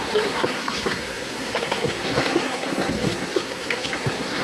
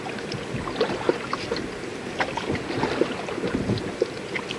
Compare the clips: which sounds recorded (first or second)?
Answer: second